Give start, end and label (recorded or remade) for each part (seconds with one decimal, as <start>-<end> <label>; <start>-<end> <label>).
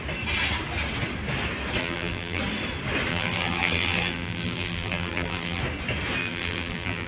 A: 0.0-1.8 recorded; 1.8-2.4 remade; 2.4-3.1 recorded; 3.1-5.6 remade; 5.6-6.2 recorded; 6.2-7.1 remade